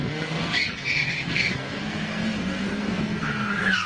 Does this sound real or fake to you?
fake